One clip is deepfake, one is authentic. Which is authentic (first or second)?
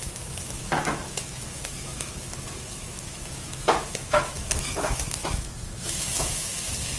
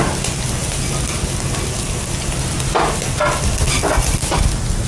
second